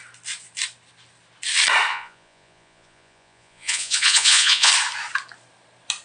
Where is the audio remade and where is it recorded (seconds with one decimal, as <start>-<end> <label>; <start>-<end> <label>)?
0.0-1.9 recorded; 1.9-4.7 remade; 4.7-6.0 recorded